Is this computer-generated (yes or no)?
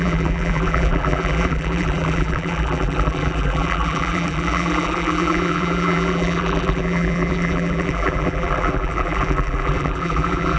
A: yes